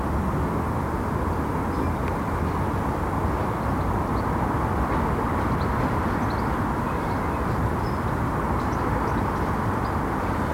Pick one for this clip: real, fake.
real